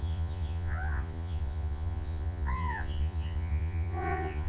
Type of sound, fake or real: fake